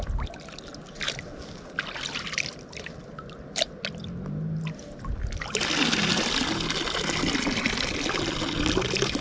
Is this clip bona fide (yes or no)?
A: yes